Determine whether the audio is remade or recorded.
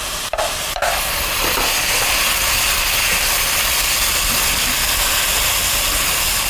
recorded